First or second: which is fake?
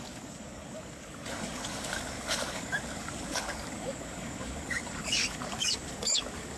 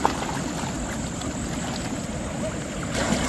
first